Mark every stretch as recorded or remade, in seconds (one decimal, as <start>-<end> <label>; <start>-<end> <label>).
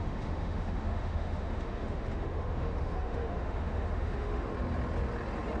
0.0-4.5 remade; 4.5-5.6 recorded